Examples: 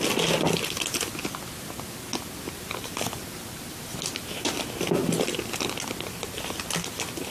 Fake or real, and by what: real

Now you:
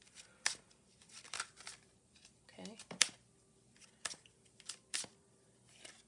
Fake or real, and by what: fake, vocoder, BigVGAN v2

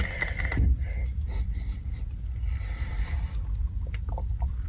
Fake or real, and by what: real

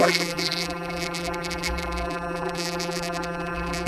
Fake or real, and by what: fake, vocoder, BigVGAN v2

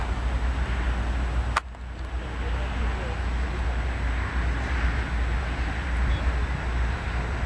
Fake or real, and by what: real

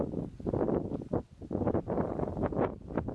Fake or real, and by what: real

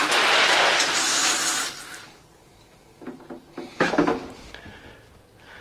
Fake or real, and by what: real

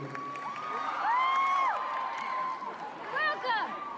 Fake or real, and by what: real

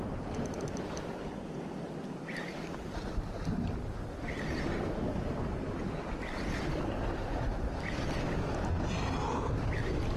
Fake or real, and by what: real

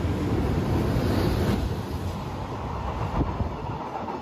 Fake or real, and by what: real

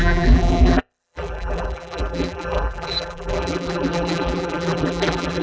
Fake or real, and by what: fake, vocoder, BigVGAN v2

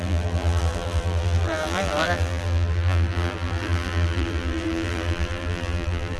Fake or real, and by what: fake, vocoder, BigVGAN v2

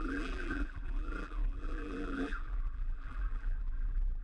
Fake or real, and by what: fake, vocoder, BigVGAN v2